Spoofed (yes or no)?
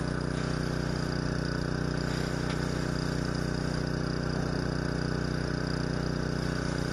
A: no